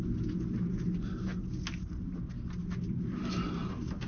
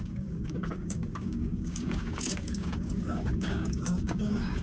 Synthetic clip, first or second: second